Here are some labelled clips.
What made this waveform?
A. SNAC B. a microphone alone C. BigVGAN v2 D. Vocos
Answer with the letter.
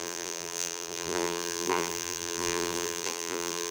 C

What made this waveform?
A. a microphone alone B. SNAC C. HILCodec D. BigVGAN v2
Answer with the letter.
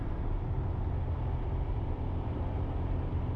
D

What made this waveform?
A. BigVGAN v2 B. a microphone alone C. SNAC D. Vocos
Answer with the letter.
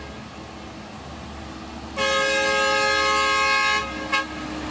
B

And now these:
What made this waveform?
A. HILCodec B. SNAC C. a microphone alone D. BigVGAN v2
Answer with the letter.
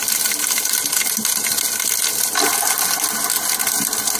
C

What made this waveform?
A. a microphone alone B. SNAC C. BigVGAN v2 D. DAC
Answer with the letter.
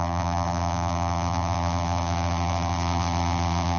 C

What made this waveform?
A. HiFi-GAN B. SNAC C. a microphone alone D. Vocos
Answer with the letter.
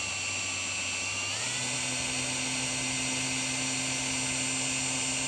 C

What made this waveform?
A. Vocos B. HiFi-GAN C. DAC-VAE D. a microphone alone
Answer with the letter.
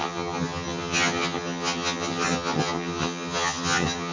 B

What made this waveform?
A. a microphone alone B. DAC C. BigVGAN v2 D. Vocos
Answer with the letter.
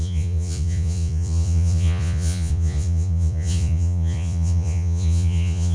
D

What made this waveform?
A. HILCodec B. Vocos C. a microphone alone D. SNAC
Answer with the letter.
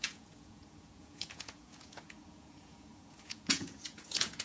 B